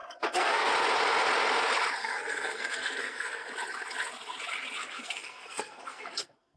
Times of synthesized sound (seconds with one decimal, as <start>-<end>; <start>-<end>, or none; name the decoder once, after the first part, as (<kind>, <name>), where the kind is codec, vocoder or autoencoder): 0.0-0.7 (codec, SNAC); 2.0-3.5; 4.8-6.6